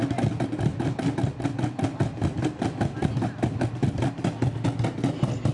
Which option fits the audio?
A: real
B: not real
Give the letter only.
A